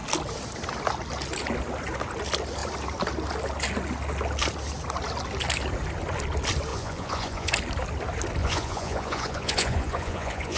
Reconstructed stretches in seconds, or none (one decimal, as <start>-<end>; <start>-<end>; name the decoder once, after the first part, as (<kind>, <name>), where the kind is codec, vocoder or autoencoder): 6.7-7.5 (vocoder, Vocos); 8.4-10.6